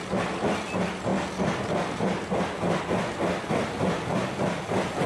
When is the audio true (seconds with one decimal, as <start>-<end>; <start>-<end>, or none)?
0.0-5.1